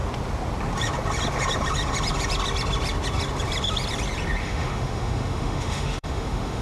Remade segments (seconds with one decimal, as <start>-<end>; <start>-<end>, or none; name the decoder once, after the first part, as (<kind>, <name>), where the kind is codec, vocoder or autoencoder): 4.4-6.6 (autoencoder, DAC-VAE)